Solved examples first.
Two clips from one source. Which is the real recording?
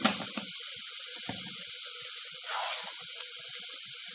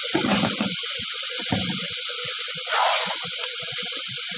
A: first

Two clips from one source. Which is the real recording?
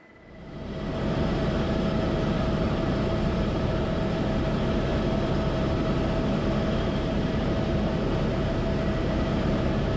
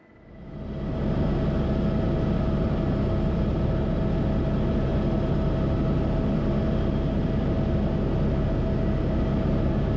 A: second